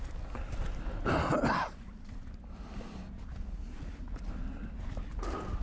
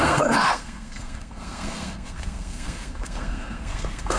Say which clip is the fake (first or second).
second